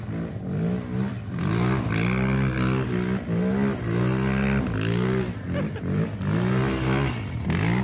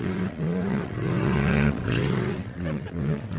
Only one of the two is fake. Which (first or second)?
second